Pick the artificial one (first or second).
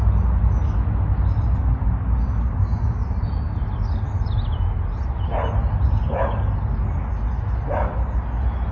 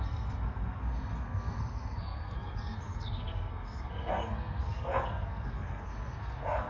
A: second